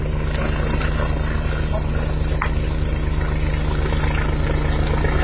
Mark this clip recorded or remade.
recorded